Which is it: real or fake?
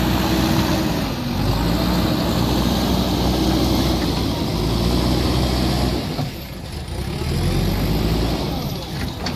real